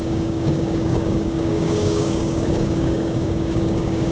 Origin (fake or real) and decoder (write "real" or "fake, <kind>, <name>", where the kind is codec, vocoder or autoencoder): fake, codec, DAC